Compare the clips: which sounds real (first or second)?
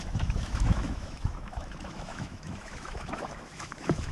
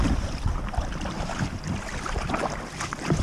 second